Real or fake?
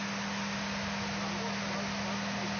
real